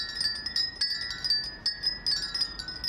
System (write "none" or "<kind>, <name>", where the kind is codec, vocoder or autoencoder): none